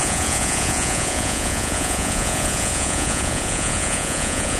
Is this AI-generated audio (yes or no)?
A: yes